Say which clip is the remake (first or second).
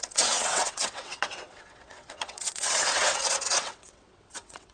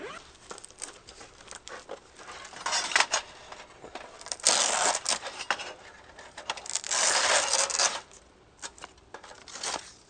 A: first